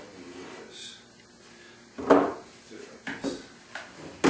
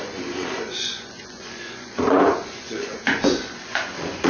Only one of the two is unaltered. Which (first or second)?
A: first